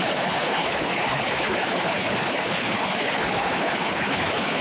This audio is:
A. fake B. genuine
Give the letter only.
A